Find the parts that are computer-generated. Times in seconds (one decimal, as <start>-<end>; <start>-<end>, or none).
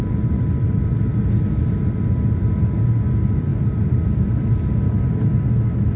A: none